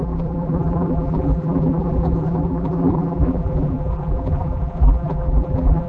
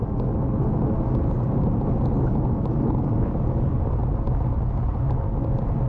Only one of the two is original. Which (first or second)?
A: second